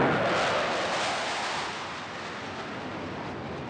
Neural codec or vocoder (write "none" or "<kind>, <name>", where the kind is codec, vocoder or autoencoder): none